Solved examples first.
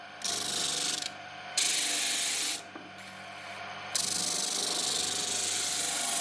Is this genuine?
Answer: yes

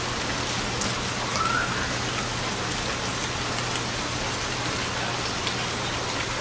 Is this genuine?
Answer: yes